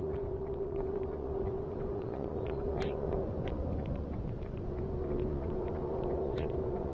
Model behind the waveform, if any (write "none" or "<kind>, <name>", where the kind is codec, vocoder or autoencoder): vocoder, Vocos